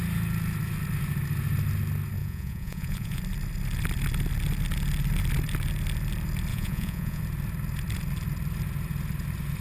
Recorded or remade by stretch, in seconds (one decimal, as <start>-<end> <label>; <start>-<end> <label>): 0.0-2.2 recorded; 2.2-3.2 remade; 3.2-6.5 recorded; 6.5-7.2 remade; 7.2-9.6 recorded